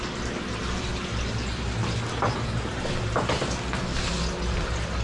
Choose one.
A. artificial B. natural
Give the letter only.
B